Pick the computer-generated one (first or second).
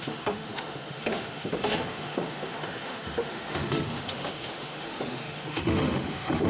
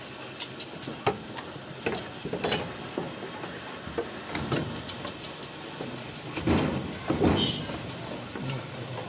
first